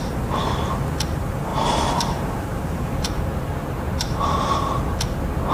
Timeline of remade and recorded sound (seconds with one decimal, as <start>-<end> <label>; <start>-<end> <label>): 0.0-1.5 recorded; 1.5-4.8 remade; 4.8-5.5 recorded